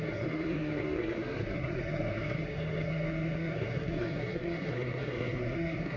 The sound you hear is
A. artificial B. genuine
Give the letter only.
A